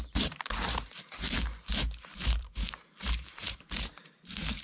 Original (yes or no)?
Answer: no